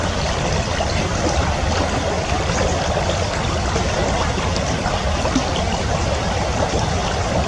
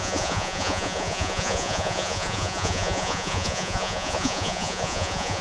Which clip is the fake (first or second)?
second